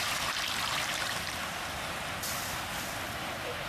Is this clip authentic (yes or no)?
yes